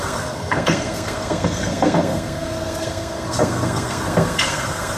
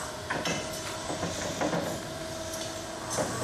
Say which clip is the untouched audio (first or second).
second